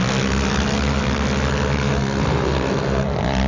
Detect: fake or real real